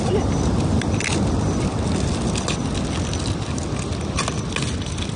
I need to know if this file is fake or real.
real